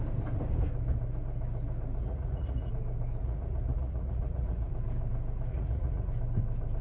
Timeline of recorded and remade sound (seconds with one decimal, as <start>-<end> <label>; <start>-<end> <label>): 0.0-2.0 recorded; 2.0-2.7 remade; 2.7-3.2 recorded; 3.2-4.7 remade; 4.7-5.5 recorded; 5.5-6.1 remade; 6.1-6.8 recorded